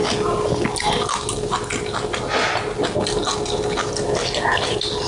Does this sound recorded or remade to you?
recorded